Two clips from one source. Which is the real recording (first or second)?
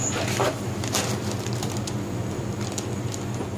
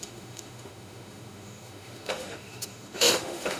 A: first